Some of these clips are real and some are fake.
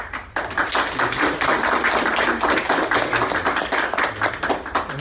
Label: real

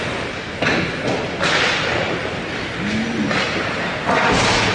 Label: real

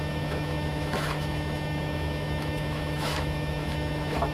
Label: fake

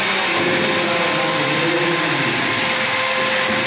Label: real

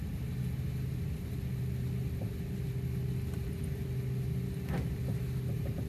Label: real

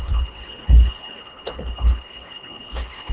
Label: fake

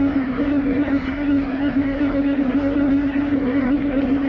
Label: fake